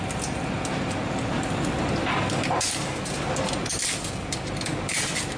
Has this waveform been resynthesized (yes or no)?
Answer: no